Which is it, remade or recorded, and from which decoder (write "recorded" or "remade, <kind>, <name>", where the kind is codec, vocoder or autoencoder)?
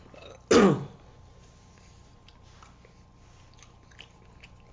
recorded